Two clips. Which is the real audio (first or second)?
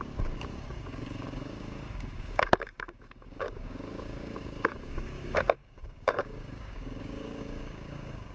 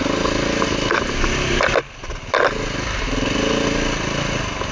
second